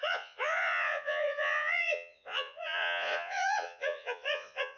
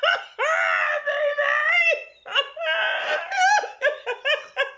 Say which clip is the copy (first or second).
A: first